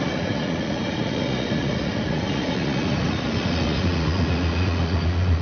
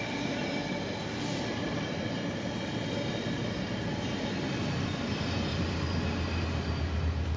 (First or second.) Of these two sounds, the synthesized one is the first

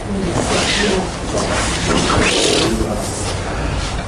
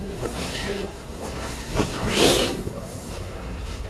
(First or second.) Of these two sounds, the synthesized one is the second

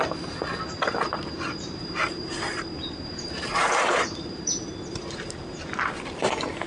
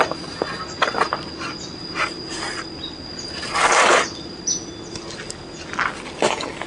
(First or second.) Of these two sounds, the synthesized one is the first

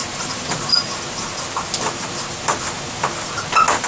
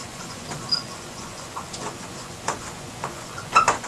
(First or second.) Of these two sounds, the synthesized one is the second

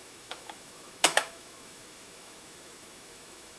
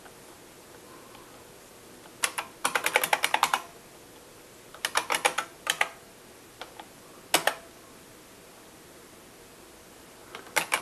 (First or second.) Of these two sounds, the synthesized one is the first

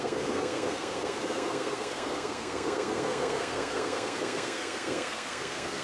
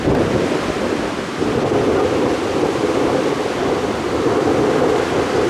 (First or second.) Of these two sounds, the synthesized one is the first